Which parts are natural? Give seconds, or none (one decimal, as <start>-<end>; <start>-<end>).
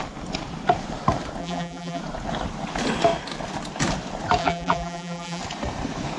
0.0-1.4; 2.0-4.4; 5.4-6.2